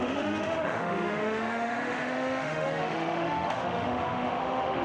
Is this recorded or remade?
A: remade